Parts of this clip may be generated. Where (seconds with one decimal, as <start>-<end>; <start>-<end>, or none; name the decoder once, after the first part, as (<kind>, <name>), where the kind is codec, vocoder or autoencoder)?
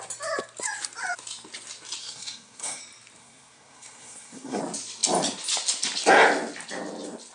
2.0-2.8 (codec, SNAC); 3.2-4.6